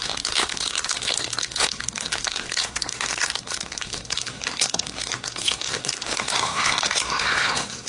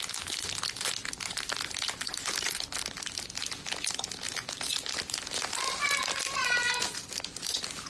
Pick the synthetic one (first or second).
first